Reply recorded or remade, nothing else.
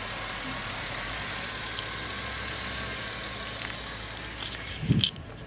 recorded